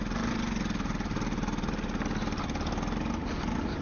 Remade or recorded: recorded